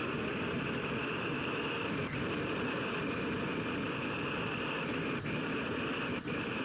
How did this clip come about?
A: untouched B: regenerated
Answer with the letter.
B